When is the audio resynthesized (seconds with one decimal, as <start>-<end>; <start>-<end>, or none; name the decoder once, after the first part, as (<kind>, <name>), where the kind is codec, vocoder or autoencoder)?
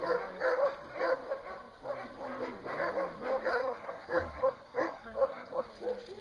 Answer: 3.5-5.7 (codec, SNAC)